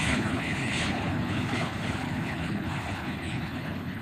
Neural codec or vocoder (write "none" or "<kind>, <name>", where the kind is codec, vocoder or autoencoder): codec, HILCodec